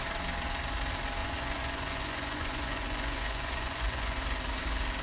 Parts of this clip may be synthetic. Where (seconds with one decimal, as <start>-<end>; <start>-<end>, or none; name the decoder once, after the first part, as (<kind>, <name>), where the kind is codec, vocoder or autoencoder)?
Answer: 1.2-4.2 (vocoder, Vocos)